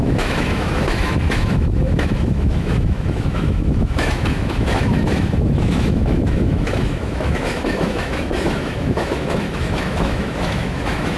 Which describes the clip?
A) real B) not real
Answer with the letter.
B